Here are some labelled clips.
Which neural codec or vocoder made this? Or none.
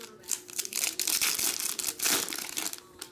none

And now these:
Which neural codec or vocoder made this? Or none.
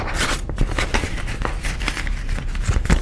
none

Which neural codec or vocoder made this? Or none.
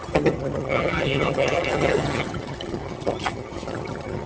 vocoder, HiFi-GAN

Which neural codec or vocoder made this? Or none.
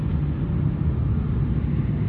none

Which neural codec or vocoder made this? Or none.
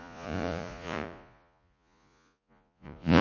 vocoder, Vocos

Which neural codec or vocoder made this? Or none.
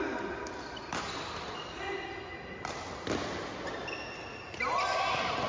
none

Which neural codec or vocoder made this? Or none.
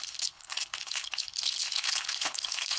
codec, HILCodec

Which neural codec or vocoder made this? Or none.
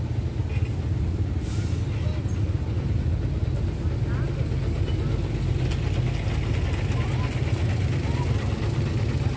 none